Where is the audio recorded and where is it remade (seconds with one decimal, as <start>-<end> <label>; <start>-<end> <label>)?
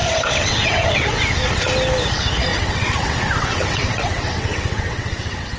0.0-1.2 remade; 1.2-2.5 recorded; 2.5-5.6 remade